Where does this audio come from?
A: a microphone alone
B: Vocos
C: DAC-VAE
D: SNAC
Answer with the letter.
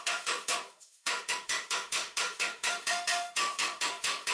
C